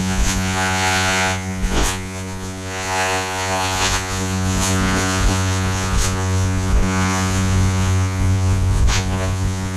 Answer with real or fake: fake